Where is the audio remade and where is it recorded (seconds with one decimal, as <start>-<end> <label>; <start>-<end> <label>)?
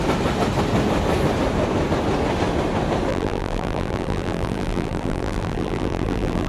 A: 0.0-3.1 recorded; 3.1-6.5 remade